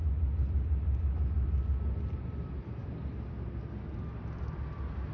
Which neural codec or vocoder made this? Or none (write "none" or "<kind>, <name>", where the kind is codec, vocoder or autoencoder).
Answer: none